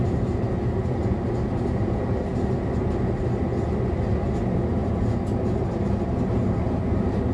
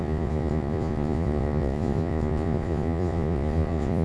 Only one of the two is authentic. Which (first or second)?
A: first